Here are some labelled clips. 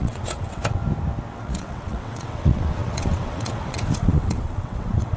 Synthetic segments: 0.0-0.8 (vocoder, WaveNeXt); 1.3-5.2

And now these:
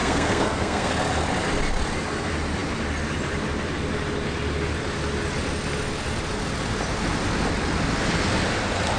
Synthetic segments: 0.0-0.9 (codec, SNAC)